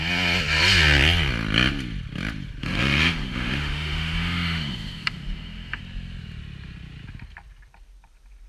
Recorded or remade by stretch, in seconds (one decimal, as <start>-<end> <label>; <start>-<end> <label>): 0.0-2.6 recorded; 2.6-5.8 remade; 5.8-8.5 recorded